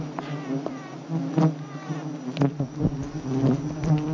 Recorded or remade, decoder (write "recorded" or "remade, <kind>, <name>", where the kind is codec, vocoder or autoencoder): recorded